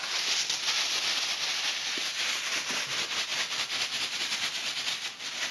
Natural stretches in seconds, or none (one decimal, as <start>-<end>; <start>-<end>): 0.0-5.5